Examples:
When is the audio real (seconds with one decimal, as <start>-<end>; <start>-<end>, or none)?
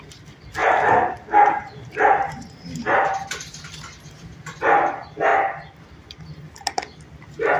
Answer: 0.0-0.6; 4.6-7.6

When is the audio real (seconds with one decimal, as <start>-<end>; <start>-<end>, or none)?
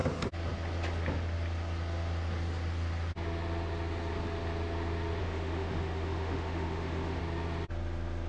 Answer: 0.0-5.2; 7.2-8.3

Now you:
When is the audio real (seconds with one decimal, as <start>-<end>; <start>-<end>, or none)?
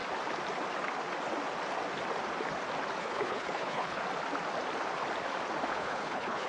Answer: 0.0-3.0; 4.0-5.7